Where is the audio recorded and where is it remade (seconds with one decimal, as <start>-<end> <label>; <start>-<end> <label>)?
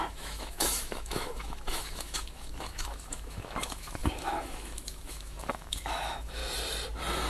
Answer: 0.0-6.4 remade; 6.4-7.3 recorded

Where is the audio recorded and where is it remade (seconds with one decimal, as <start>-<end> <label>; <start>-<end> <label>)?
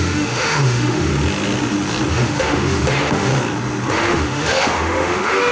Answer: 0.0-1.1 remade; 1.1-2.1 recorded; 2.1-3.3 remade; 3.3-3.9 recorded; 3.9-5.5 remade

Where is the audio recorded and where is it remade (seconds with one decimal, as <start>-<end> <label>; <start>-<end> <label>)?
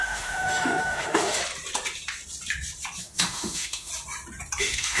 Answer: 0.0-1.4 remade; 1.4-3.0 recorded; 3.0-3.9 remade; 3.9-4.6 recorded; 4.6-5.0 remade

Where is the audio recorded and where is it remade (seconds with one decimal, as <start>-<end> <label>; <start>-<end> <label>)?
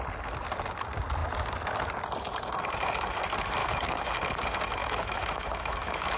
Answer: 0.0-3.6 recorded; 3.6-4.1 remade; 4.1-4.8 recorded; 4.8-6.2 remade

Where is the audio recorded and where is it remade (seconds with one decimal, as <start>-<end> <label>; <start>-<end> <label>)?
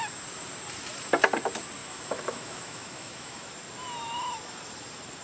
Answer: 0.0-1.8 recorded; 1.8-3.5 remade; 3.5-5.2 recorded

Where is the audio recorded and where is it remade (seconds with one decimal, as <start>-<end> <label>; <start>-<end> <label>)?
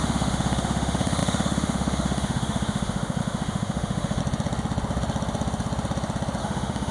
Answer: 0.0-4.2 remade; 4.2-6.4 recorded; 6.4-6.9 remade